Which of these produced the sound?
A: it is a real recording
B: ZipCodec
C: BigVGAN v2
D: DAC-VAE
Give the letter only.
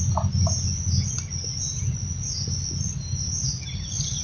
A